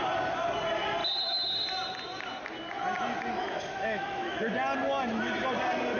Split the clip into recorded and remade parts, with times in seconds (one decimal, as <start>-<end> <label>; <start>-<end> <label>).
0.0-3.4 recorded; 3.4-4.5 remade; 4.5-6.0 recorded